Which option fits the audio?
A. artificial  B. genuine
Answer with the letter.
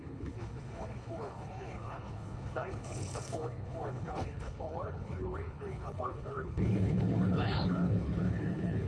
A